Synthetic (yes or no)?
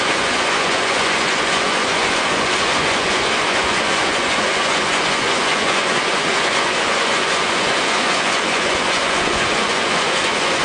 yes